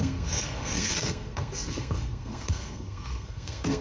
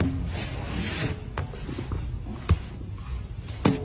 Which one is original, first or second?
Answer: second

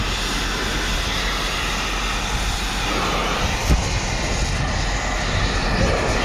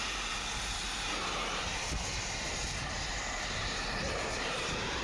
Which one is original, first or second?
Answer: first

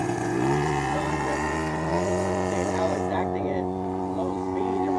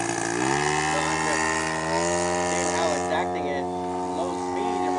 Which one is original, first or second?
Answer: second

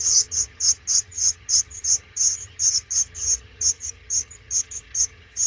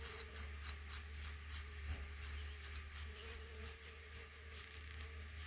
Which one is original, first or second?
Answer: second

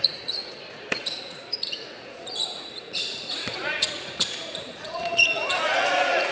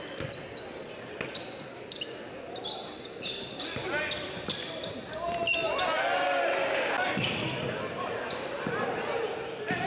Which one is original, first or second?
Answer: second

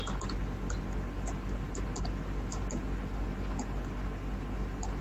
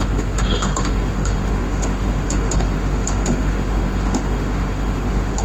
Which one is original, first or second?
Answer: first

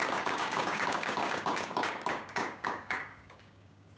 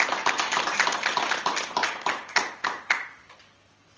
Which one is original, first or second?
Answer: second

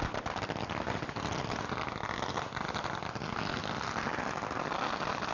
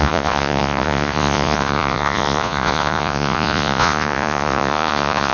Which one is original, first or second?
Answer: first